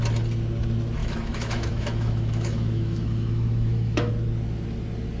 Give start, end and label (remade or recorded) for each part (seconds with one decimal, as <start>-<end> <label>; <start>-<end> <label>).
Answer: 0.0-1.0 recorded; 1.0-4.1 remade; 4.1-5.2 recorded